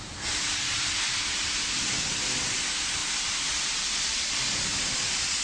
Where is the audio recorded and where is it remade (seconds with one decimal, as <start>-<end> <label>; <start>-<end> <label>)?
0.0-5.4 recorded

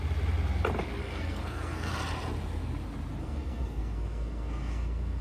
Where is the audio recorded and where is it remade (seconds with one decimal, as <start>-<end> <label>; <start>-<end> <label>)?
0.0-1.0 recorded; 1.0-1.9 remade; 1.9-3.2 recorded; 3.2-5.2 remade

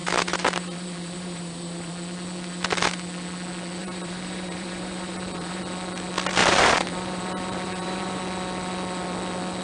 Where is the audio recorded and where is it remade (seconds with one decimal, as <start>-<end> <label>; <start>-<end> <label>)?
0.0-1.9 remade; 1.9-3.8 recorded; 3.8-5.6 remade; 5.6-6.4 recorded; 6.4-8.2 remade; 8.2-9.6 recorded

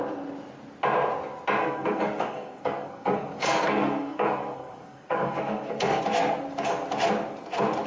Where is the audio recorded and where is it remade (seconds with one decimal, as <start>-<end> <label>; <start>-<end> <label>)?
0.0-1.6 recorded; 1.6-6.0 remade; 6.0-7.9 recorded

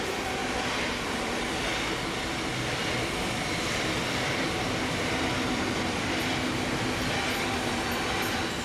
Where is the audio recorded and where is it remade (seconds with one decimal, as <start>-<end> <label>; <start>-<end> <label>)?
0.0-0.4 recorded; 0.4-1.6 remade; 1.6-2.5 recorded; 2.5-6.2 remade; 6.2-8.6 recorded

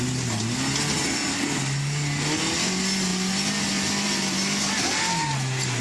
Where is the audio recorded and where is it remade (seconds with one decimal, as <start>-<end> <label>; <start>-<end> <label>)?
0.0-5.8 recorded

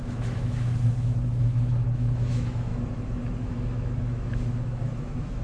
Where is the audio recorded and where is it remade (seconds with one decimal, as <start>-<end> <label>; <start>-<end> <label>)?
0.0-5.4 remade